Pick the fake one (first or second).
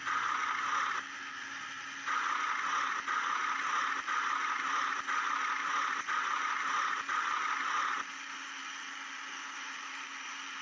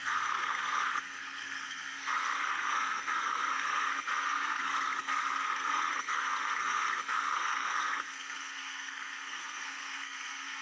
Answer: second